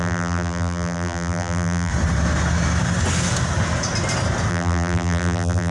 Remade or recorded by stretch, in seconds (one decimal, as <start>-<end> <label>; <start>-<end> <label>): 0.0-1.9 remade; 1.9-4.5 recorded; 4.5-5.7 remade